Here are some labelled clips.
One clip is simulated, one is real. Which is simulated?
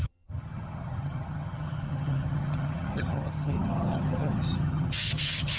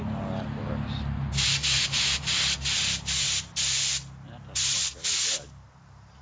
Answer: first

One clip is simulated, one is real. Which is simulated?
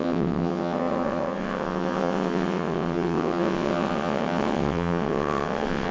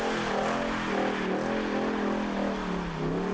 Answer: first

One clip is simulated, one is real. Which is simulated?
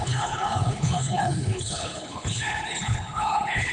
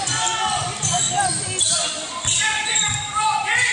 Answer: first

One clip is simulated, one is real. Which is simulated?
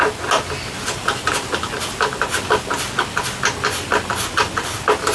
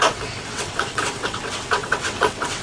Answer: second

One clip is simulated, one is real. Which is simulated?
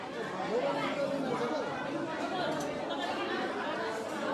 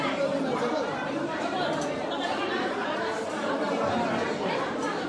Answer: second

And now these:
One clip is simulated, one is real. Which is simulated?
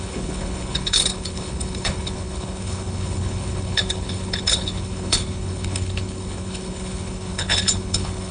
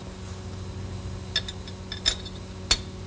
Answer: first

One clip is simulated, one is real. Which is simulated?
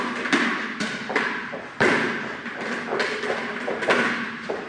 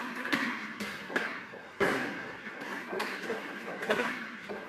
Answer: second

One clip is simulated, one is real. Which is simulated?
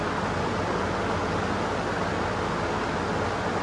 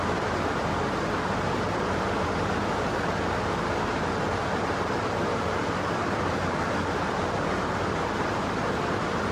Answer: second